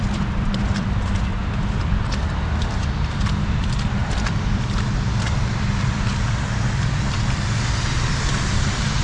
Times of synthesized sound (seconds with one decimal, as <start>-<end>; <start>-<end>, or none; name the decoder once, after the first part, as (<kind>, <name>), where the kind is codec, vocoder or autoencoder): 0.0-1.3 (vocoder, BigVGAN v2); 2.9-9.0